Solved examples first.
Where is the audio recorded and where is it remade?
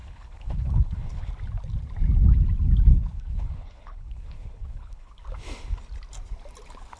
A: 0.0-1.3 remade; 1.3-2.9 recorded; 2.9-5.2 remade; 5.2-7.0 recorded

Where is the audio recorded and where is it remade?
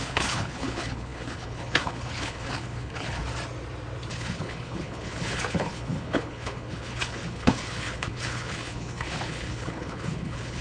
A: 0.0-3.2 remade; 3.2-4.1 recorded; 4.1-10.6 remade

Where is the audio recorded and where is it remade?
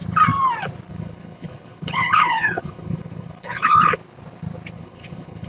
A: 0.0-0.9 recorded; 0.9-4.0 remade; 4.0-4.7 recorded; 4.7-5.5 remade